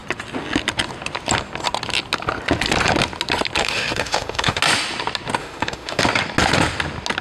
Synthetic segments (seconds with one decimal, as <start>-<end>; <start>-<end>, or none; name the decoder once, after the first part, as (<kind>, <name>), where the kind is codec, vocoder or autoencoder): 3.6-4.6 (autoencoder, DAC-VAE); 5.4-6.0